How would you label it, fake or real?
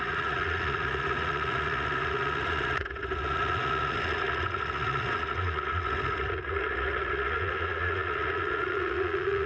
fake